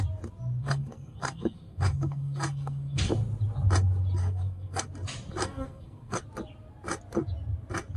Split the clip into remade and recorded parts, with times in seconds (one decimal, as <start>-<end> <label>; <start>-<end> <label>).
0.0-0.6 recorded; 0.6-3.1 remade; 3.1-4.2 recorded; 4.2-4.8 remade; 4.8-5.4 recorded; 5.4-6.2 remade; 6.2-8.0 recorded